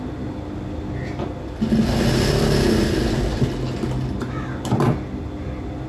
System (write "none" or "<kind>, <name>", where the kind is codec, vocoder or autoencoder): none